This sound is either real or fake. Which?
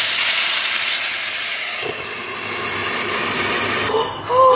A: real